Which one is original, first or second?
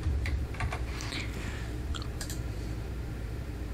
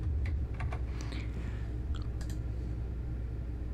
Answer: second